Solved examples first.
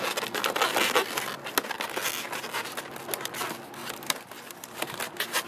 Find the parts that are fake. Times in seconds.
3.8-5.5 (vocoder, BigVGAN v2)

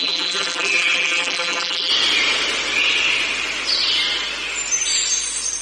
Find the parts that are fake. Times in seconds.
0.0-1.9 (vocoder, BigVGAN v2)

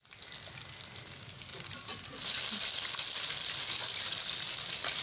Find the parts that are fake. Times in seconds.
1.5-4.5 (vocoder, BigVGAN v2)

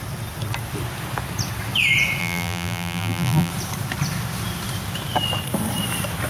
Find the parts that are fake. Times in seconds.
2.2-3.5 (vocoder, BigVGAN v2)

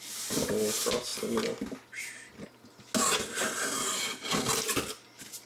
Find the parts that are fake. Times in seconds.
none